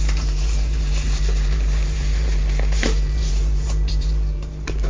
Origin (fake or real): fake